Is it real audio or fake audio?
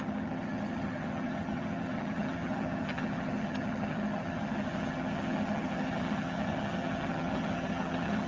fake